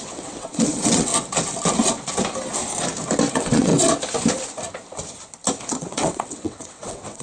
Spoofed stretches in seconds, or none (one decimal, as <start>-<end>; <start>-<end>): 0.0-1.1; 3.3-3.7; 5.6-7.2